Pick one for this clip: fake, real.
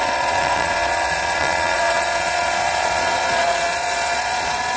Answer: fake